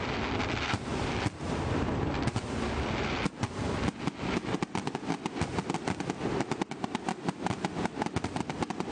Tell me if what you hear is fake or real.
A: real